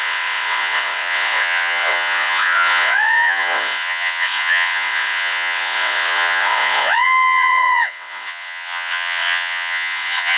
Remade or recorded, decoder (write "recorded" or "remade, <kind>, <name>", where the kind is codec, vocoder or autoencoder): remade, vocoder, WaveNeXt